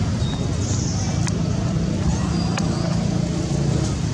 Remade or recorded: recorded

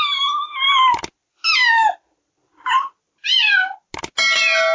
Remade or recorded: recorded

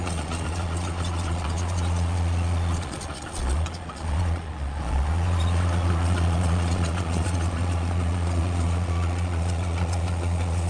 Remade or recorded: remade